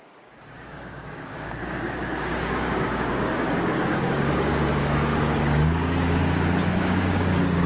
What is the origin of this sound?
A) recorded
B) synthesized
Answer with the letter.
B